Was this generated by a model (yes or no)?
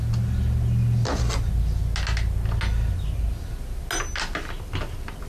no